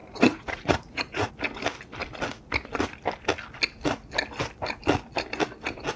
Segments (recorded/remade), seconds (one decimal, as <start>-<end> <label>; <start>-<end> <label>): 0.0-1.3 remade; 1.3-6.0 recorded